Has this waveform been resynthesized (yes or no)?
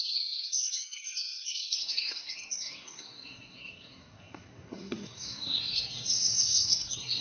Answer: yes